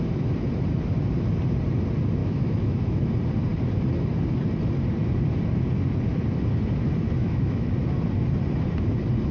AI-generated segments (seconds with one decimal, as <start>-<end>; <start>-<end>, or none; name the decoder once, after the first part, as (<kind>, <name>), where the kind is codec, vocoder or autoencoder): 2.2-3.1 (autoencoder, DAC-VAE); 7.2-7.7